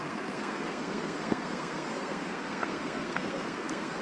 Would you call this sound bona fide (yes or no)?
no